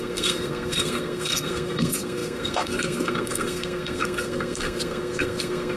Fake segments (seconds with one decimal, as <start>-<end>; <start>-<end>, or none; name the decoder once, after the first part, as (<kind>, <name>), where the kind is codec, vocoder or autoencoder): 0.0-5.8 (codec, SNAC)